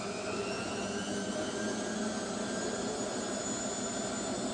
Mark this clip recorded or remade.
recorded